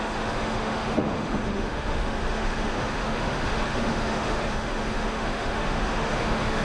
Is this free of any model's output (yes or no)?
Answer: no